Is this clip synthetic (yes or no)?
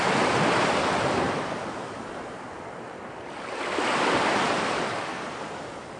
no